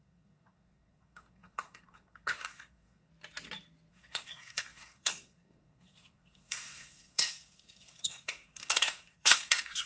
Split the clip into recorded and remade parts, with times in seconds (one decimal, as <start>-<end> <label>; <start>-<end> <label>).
0.0-3.1 remade; 3.1-3.9 recorded; 3.9-9.9 remade